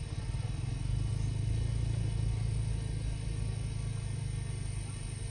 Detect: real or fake real